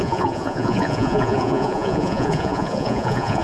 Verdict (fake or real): fake